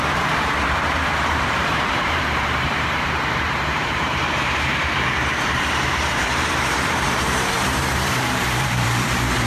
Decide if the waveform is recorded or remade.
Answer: remade